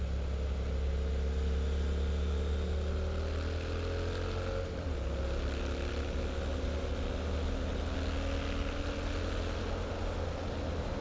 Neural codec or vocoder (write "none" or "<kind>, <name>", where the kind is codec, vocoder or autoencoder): none